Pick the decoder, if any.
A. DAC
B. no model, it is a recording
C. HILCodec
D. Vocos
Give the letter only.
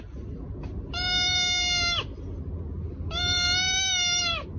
B